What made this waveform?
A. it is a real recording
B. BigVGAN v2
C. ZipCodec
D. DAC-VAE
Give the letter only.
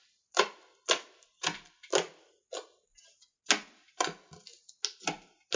A